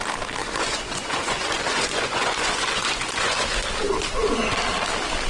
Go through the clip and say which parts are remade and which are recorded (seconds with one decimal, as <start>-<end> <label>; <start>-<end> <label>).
0.0-0.4 recorded; 0.4-3.6 remade; 3.6-5.3 recorded